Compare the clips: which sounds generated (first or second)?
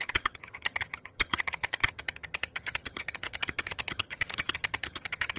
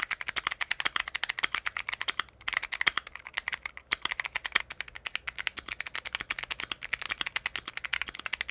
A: first